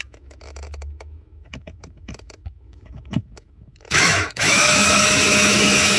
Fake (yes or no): yes